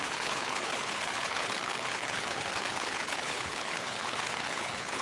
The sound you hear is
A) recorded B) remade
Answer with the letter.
B